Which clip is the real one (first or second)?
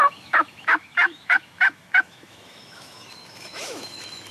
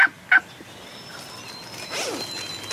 second